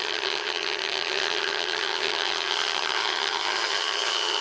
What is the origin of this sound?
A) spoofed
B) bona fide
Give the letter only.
A